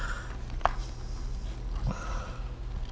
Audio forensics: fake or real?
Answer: real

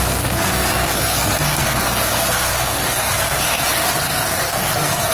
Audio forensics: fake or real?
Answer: fake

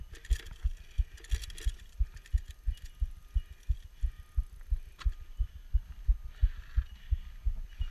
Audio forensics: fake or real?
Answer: real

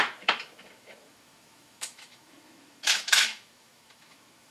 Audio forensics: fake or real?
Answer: fake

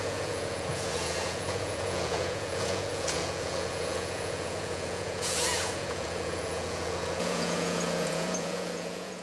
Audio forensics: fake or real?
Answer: fake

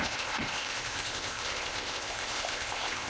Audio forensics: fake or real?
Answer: fake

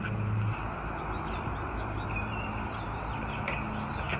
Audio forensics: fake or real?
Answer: real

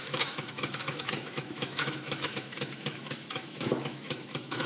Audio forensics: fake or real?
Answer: fake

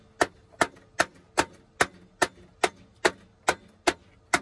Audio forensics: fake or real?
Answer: real